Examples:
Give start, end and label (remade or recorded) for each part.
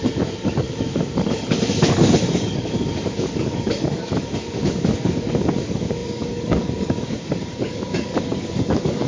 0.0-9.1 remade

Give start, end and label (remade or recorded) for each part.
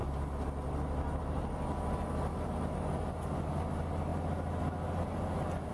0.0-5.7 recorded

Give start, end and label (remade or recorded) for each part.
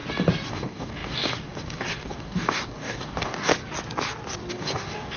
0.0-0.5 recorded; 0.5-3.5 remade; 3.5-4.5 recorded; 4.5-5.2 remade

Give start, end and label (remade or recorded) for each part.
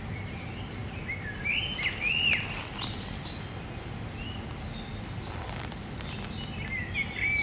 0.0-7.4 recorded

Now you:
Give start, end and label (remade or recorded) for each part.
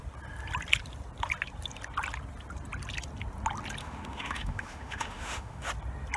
0.0-3.8 recorded; 3.8-5.7 remade; 5.7-6.2 recorded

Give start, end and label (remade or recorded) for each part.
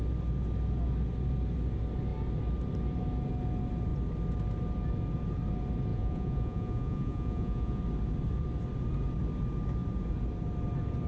0.0-5.9 recorded; 5.9-7.8 remade; 7.8-11.1 recorded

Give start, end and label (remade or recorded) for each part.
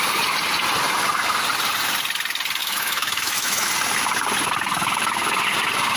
0.0-2.6 recorded; 2.6-3.7 remade; 3.7-6.0 recorded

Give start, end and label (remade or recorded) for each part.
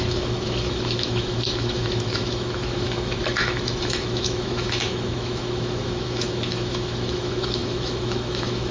0.0-8.7 remade